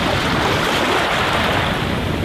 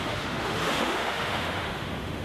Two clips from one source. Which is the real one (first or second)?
first